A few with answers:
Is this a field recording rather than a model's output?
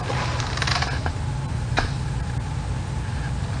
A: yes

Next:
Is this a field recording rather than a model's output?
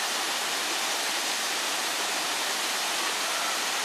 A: yes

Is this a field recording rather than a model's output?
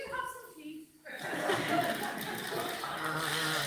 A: yes